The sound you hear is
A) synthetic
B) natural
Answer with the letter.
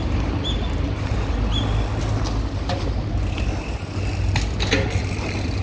B